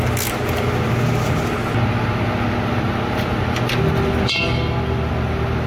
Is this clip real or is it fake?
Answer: real